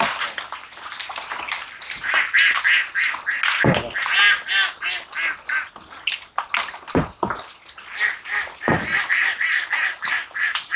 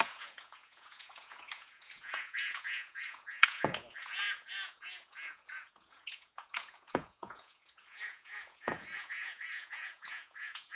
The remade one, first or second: second